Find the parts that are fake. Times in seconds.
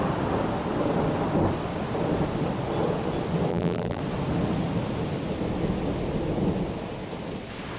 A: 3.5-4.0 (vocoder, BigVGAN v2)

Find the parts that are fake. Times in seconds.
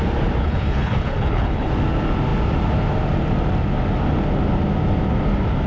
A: 0.4-1.7 (codec, HILCodec)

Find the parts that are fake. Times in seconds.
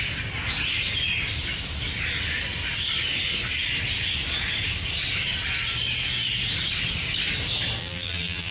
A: 7.8-8.5 (vocoder, BigVGAN v2)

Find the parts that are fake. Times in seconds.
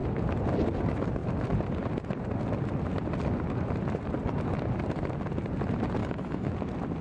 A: 6.0-6.5 (autoencoder, DAC-VAE)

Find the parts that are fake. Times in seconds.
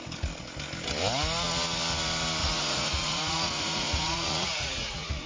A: 2.4-5.3 (vocoder, Vocos)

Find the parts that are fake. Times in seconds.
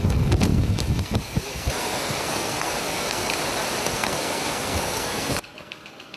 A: 0.0-3.3 (codec, SNAC); 3.9-6.2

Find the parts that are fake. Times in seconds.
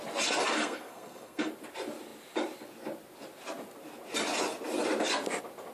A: 0.6-1.5 (codec, SNAC)